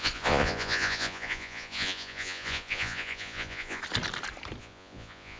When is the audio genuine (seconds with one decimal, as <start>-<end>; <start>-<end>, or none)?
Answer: 3.8-4.6